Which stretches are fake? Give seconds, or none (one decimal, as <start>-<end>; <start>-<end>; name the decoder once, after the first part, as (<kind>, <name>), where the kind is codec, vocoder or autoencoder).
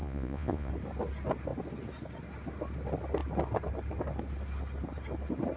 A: 0.0-0.7 (vocoder, Vocos)